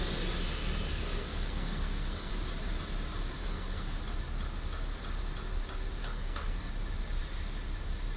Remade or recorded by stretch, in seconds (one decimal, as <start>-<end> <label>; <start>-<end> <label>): 0.0-0.9 recorded; 0.9-2.3 remade; 2.3-3.4 recorded; 3.4-4.0 remade; 4.0-6.0 recorded; 6.0-6.7 remade; 6.7-8.2 recorded